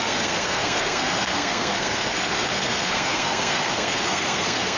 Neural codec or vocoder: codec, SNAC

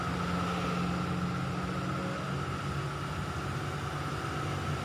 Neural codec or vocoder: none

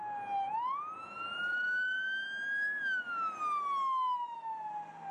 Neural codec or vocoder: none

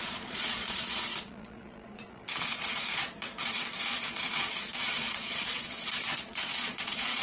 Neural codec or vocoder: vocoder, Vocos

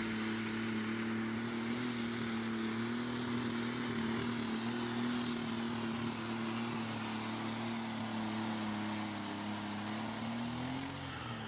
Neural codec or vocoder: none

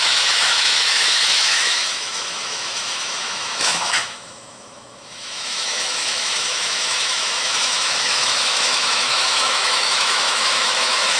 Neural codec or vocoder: autoencoder, DAC-VAE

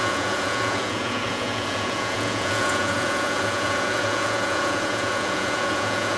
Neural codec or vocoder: vocoder, Vocos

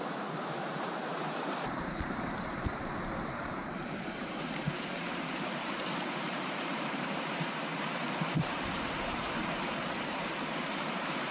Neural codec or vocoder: vocoder, BigVGAN v2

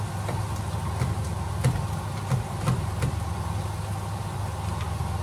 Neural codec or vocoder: none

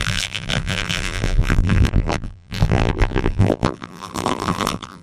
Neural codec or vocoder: vocoder, BigVGAN v2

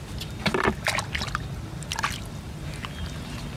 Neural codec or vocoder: none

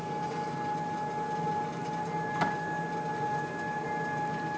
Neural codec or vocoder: none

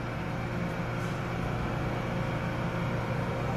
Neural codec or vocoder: none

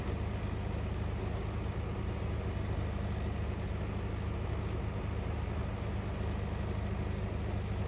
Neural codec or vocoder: none